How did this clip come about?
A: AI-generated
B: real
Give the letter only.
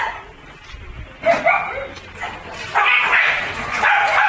B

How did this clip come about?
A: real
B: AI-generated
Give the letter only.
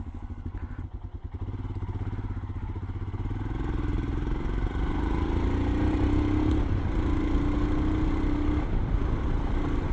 A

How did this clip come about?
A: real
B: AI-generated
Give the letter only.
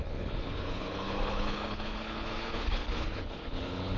B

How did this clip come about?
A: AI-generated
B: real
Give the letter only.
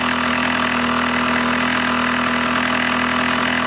B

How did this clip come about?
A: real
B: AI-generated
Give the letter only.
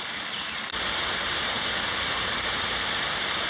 A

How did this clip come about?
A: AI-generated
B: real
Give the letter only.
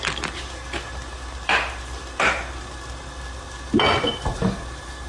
B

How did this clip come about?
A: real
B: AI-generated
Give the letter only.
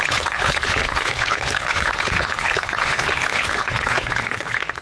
B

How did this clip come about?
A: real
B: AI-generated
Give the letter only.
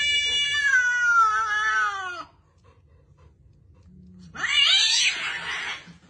A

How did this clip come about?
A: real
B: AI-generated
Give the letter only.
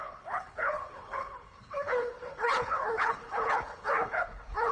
B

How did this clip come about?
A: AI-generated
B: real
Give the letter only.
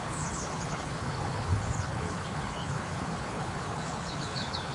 A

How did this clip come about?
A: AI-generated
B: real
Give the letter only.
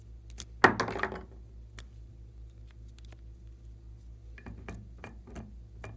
B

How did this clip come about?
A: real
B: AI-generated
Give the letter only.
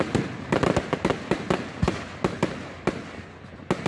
A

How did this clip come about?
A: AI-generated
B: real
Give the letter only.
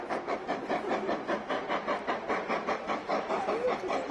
B